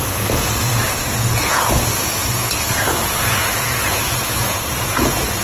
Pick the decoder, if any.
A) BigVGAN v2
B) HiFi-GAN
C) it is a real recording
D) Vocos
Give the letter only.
D